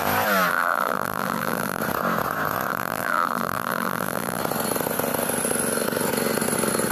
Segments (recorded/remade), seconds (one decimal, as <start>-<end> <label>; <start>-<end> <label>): 0.0-0.5 recorded; 0.5-1.8 remade; 1.8-2.7 recorded; 2.7-4.4 remade; 4.4-6.9 recorded